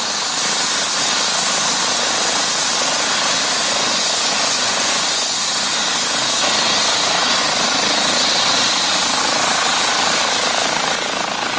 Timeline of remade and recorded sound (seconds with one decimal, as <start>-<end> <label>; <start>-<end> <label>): 0.0-3.6 recorded; 3.6-5.7 remade; 5.7-11.6 recorded